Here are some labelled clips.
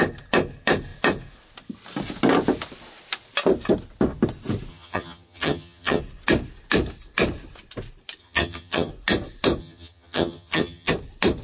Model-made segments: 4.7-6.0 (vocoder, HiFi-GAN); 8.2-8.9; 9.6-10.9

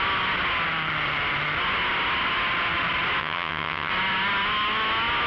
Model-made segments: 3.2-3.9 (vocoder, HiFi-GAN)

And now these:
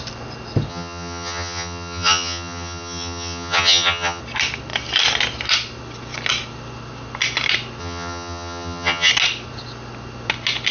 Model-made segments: 0.7-4.2 (vocoder, HiFi-GAN); 7.8-9.1

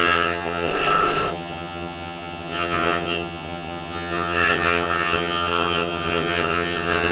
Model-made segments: 0.0-0.7 (vocoder, HiFi-GAN); 1.3-7.1

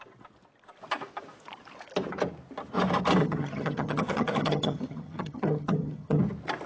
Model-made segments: 3.2-6.2 (vocoder, HiFi-GAN)